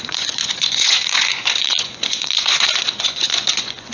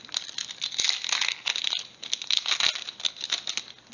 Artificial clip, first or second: first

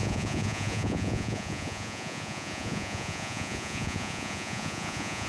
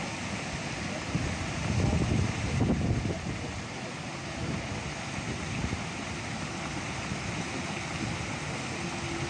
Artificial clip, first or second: first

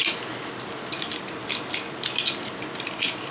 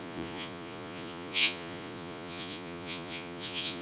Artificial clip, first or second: second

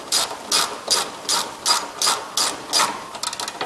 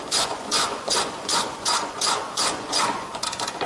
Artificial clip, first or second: second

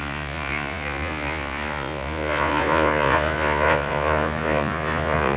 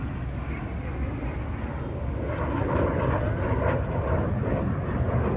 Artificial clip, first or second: first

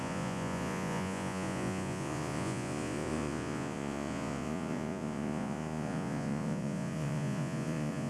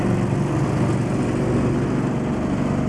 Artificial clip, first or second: first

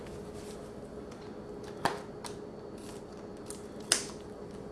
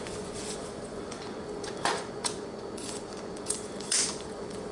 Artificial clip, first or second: second